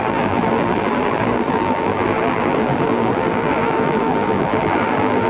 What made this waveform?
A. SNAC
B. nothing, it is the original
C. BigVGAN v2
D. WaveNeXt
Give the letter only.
C